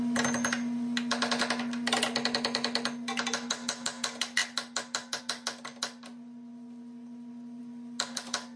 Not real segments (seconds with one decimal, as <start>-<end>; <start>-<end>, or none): none